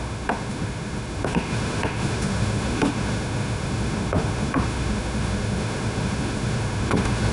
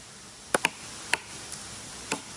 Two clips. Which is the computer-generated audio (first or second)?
first